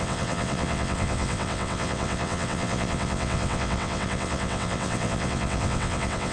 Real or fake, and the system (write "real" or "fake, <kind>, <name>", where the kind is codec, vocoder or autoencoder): fake, vocoder, WaveNeXt